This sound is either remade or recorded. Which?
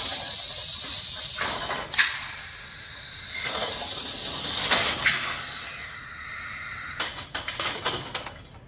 recorded